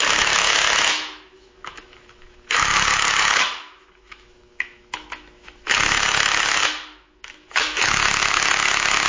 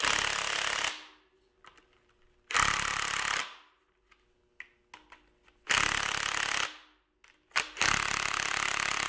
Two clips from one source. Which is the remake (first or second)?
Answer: first